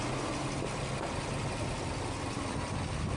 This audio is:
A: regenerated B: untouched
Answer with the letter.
B